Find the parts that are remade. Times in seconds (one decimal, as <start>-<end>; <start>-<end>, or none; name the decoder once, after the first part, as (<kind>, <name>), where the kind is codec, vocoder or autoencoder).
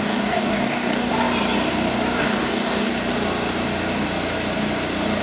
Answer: 0.0-1.1 (codec, DAC); 2.2-2.9